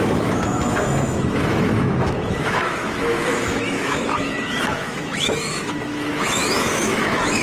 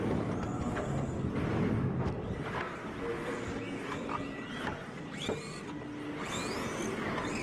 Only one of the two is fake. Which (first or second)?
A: first